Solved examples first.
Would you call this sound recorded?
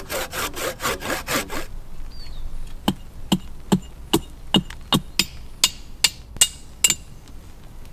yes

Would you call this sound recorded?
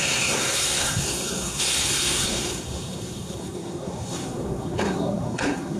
no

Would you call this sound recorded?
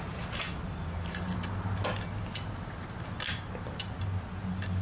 yes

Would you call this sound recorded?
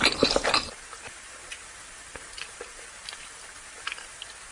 no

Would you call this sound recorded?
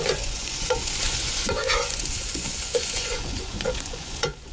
no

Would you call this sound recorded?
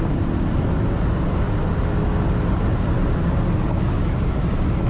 yes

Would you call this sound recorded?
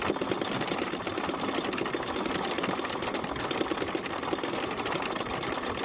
yes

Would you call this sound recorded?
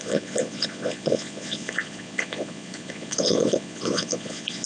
no